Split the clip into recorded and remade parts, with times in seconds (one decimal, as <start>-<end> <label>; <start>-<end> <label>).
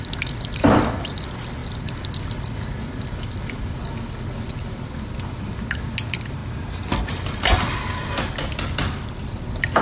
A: 0.0-9.8 recorded